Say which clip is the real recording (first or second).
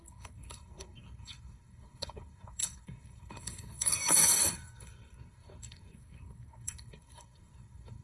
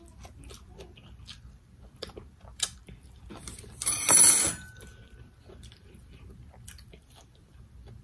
second